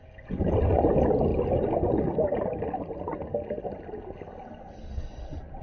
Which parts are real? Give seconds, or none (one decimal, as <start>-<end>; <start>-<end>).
0.0-5.6